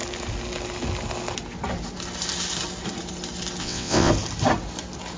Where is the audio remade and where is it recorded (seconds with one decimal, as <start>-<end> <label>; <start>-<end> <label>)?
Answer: 0.0-3.6 recorded; 3.6-4.1 remade; 4.1-5.2 recorded